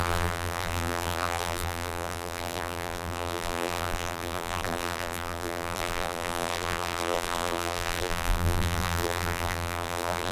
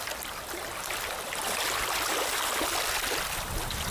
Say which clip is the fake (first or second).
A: first